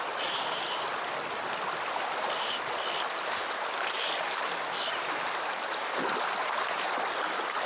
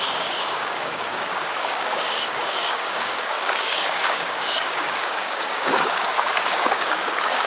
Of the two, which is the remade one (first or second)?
second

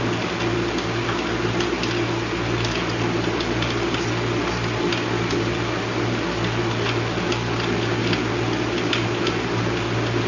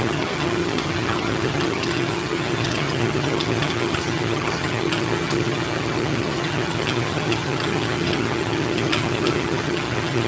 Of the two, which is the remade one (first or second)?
second